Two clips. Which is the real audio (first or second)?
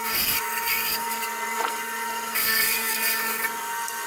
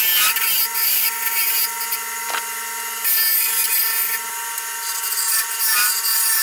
second